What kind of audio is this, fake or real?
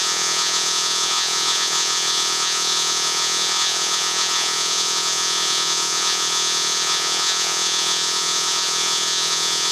fake